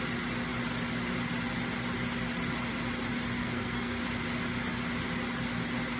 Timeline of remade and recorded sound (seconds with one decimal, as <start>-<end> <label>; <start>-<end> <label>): 0.0-3.4 recorded; 3.4-4.0 remade; 4.0-6.0 recorded